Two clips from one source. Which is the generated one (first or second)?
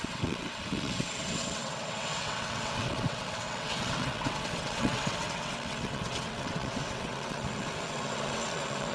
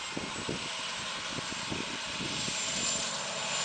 first